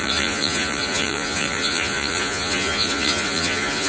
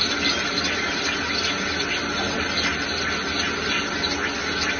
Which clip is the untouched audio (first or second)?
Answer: second